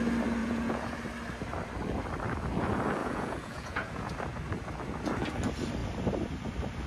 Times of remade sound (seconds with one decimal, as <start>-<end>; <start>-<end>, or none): 0.4-1.0; 3.0-4.1